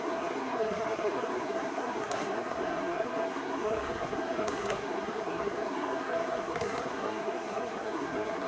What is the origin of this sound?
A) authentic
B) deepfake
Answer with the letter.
B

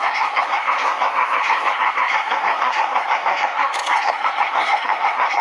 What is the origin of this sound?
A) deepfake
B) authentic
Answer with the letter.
A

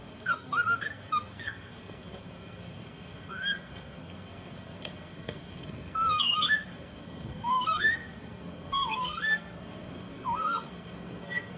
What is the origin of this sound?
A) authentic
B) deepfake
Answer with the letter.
B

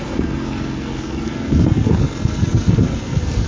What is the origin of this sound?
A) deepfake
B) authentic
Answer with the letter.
A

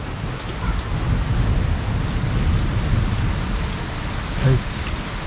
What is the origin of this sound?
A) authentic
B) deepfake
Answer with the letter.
A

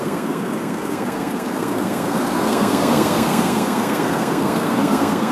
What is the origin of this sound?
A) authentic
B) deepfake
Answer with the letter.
B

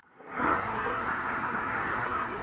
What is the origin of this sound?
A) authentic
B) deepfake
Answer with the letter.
B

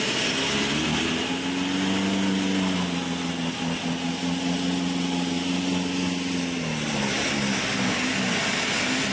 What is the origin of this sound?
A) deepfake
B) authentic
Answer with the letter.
B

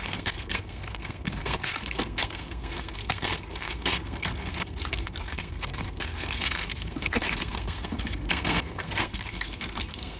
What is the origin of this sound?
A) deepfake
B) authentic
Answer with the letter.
A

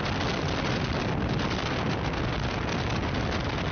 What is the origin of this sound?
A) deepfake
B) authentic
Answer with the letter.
B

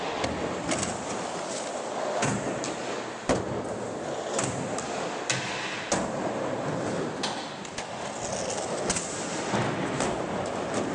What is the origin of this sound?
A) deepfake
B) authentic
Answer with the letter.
B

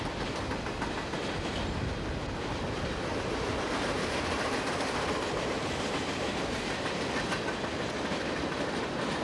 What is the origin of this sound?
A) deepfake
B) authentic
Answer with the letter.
B